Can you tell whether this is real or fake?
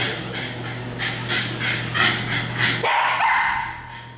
real